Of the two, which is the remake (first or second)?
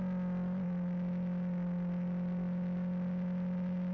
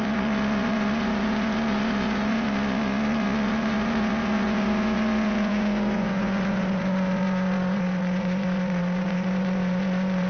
second